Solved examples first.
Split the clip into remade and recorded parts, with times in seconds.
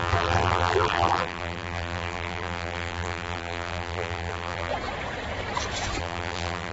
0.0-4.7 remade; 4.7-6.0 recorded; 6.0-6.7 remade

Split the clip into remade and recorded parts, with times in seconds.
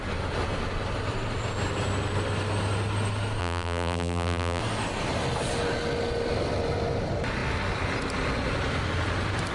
0.0-3.4 recorded; 3.4-4.6 remade; 4.6-9.5 recorded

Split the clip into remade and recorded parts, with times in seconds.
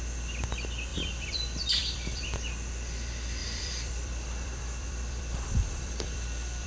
0.0-0.9 recorded; 0.9-2.5 remade; 2.5-3.4 recorded; 3.4-6.7 remade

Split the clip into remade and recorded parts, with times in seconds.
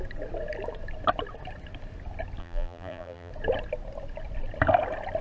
0.0-2.4 recorded; 2.4-3.3 remade; 3.3-5.2 recorded